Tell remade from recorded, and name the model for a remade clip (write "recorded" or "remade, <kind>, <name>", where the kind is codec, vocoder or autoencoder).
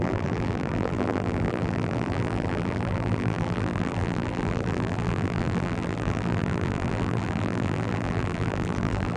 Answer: remade, vocoder, BigVGAN v2